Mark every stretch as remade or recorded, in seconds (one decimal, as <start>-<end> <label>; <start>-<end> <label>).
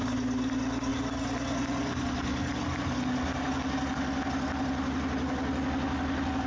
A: 0.0-6.5 recorded